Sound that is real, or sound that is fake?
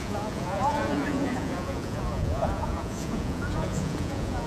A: fake